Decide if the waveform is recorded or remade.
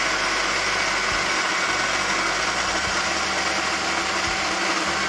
recorded